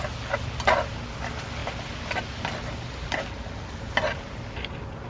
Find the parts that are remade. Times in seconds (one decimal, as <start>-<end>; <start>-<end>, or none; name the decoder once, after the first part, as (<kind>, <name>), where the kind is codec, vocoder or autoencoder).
none